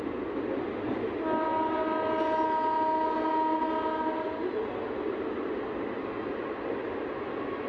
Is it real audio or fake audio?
real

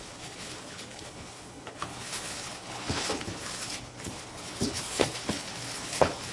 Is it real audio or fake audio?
fake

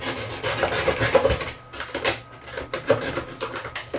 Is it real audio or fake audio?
real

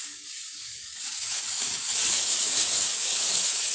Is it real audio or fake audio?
fake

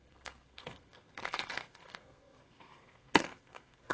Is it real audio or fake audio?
fake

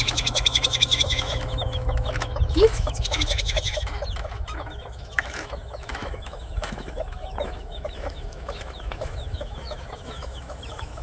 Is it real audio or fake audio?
fake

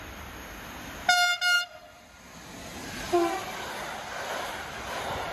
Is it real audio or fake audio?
real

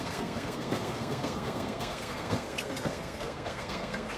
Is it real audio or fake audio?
fake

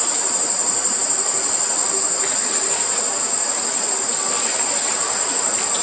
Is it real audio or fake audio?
real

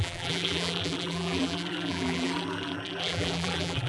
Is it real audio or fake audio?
fake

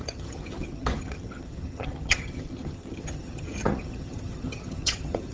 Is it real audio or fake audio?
fake